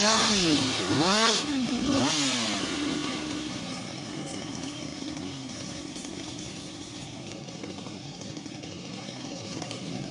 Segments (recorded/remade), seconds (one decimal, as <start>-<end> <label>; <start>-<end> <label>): 0.0-2.0 remade; 2.0-2.6 recorded; 2.6-10.1 remade